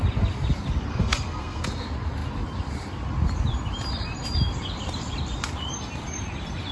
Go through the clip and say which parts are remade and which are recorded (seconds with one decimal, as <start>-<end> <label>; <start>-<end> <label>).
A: 0.0-0.9 recorded; 0.9-1.6 remade; 1.6-6.7 recorded